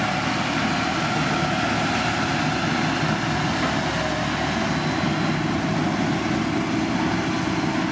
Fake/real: real